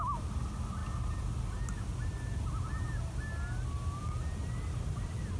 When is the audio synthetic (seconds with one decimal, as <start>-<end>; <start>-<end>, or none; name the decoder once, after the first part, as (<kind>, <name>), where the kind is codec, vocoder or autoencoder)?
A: none